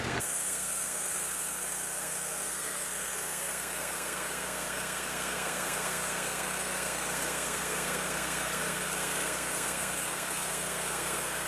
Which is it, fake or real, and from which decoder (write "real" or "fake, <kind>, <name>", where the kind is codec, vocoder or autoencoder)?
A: fake, codec, SNAC